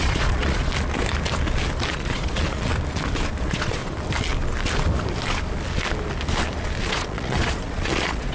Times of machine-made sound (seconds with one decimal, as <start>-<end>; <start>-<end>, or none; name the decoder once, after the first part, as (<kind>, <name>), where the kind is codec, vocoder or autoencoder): 0.0-0.7 (vocoder, Vocos); 1.9-2.7; 3.4-3.8; 6.9-8.3